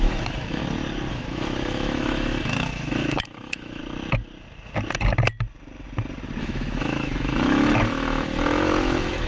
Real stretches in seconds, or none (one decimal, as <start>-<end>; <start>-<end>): 0.6-1.1; 3.8-6.4